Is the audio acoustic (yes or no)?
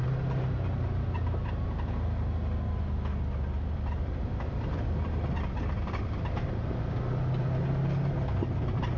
yes